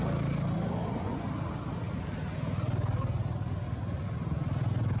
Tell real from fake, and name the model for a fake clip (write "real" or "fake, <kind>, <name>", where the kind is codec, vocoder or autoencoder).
real